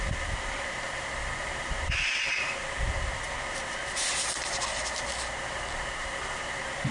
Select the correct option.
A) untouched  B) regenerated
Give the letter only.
A